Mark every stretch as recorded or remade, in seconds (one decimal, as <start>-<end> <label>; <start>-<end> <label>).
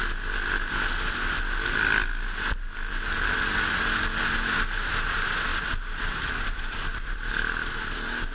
0.0-5.5 recorded; 5.5-7.3 remade; 7.3-8.3 recorded